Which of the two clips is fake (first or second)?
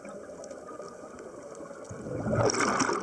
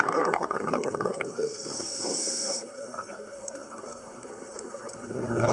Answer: second